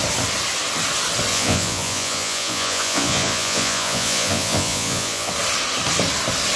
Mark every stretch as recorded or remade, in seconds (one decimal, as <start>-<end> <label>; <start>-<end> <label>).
0.0-1.3 recorded; 1.3-5.3 remade; 5.3-6.6 recorded